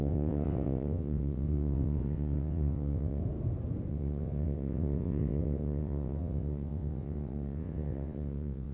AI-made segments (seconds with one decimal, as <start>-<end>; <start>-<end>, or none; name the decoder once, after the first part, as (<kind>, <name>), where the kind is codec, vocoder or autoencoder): 0.0-3.2 (vocoder, WaveNeXt); 3.9-8.7